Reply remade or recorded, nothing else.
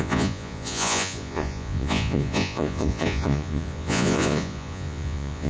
remade